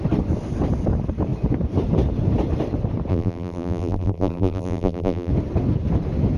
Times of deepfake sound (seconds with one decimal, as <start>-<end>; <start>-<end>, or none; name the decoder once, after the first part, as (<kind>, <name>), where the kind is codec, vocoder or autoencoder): 3.1-5.3 (vocoder, BigVGAN v2)